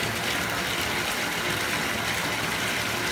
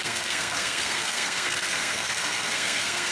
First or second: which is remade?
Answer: second